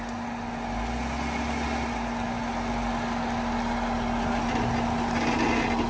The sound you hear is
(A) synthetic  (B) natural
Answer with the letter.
B